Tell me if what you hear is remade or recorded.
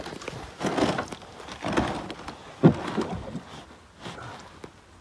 recorded